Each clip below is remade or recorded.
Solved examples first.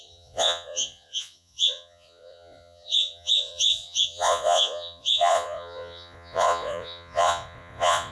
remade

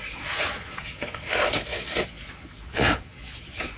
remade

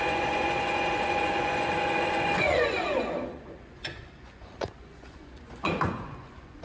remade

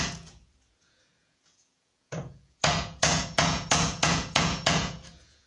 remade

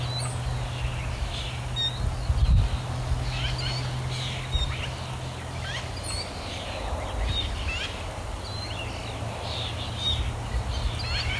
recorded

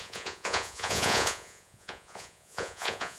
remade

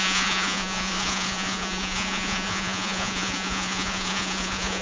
remade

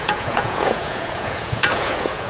remade